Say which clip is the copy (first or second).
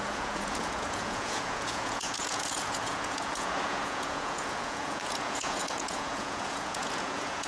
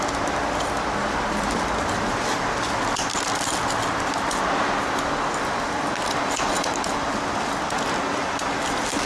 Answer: first